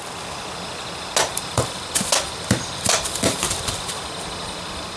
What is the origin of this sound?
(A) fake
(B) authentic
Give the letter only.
B